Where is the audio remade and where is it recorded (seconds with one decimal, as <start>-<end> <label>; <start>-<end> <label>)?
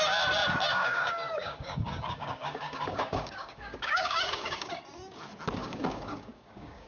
0.0-0.7 recorded; 0.7-4.8 remade; 4.8-5.6 recorded; 5.6-6.9 remade